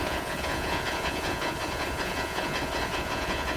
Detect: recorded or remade remade